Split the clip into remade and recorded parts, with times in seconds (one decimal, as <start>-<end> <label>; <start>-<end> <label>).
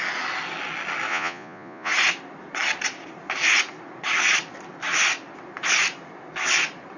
0.0-1.1 recorded; 1.1-1.9 remade; 1.9-7.0 recorded